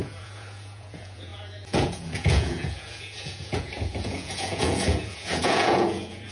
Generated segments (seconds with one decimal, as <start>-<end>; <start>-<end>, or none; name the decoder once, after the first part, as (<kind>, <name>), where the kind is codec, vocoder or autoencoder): 0.0-6.3 (vocoder, Vocos)